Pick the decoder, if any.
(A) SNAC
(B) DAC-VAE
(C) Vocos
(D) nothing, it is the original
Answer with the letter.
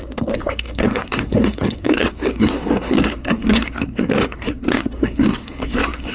A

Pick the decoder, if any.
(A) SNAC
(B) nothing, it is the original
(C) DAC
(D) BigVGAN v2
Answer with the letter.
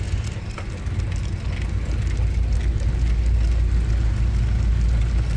B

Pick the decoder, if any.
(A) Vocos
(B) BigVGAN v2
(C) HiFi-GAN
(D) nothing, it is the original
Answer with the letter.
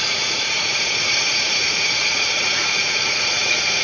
A